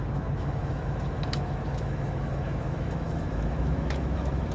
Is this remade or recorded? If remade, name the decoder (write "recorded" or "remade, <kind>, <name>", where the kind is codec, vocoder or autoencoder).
remade, autoencoder, DAC-VAE